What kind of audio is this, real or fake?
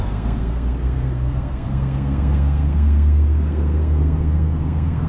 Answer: fake